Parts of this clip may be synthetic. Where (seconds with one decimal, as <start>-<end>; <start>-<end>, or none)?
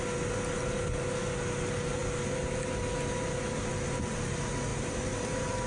4.7-5.7